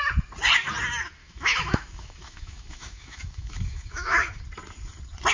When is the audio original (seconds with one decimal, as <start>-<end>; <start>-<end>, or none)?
0.0-1.2; 4.4-5.3